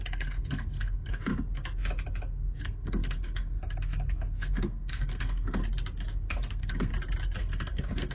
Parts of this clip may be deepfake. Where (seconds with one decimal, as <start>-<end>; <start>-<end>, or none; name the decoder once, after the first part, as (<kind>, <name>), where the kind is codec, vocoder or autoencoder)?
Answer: 0.0-1.3 (codec, SNAC); 2.6-5.6; 6.3-6.9; 7.4-8.1